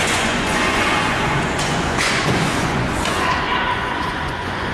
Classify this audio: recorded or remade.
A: remade